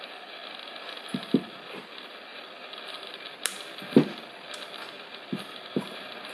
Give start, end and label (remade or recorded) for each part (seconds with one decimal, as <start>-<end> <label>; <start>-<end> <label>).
0.0-6.3 recorded